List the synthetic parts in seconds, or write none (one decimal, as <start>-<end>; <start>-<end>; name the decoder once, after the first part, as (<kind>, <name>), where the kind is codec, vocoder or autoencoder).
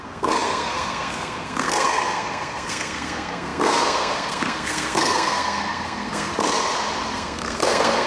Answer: 0.0-6.3 (codec, SNAC); 7.1-8.1